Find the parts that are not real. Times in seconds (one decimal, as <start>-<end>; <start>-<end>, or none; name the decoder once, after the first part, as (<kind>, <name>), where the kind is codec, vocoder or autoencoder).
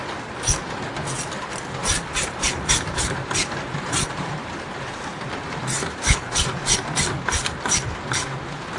1.8-6.7 (vocoder, BigVGAN v2)